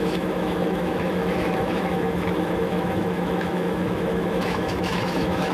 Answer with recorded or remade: remade